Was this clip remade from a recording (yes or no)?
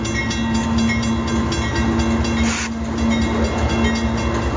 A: no